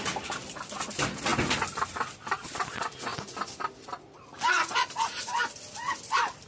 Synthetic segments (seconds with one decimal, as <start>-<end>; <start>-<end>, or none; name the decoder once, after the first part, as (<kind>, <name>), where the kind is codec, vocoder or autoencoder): 0.0-0.4 (vocoder, BigVGAN v2); 0.9-1.3; 1.9-3.1; 4.6-6.5